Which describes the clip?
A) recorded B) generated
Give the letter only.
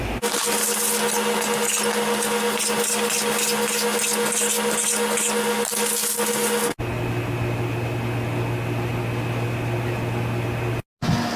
A